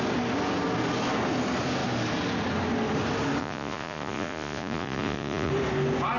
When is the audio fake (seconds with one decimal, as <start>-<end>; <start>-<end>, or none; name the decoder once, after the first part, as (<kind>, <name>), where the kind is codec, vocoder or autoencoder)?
3.4-5.5 (vocoder, Vocos)